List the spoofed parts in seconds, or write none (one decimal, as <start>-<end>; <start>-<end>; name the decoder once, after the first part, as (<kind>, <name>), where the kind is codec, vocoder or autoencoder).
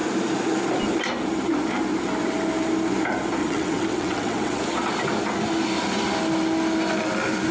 3.4-4.6 (vocoder, WaveNeXt)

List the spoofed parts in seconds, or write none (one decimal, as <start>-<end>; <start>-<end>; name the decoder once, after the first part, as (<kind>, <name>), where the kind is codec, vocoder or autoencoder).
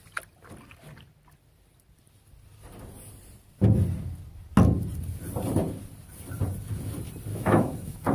7.3-8.1 (autoencoder, DAC-VAE)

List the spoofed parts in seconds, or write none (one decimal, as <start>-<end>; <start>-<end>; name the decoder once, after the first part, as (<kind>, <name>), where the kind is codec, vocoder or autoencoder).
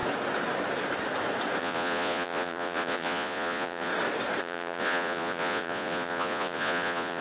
1.6-3.9 (vocoder, Vocos); 4.4-7.2